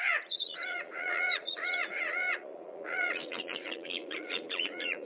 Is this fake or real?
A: fake